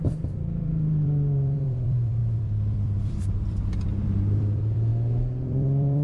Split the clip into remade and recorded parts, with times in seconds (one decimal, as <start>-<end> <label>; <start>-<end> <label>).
0.0-4.9 remade; 4.9-5.4 recorded; 5.4-6.0 remade